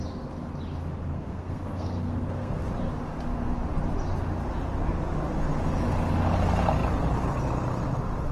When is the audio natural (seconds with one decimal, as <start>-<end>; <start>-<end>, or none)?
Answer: 0.0-1.1; 2.6-8.3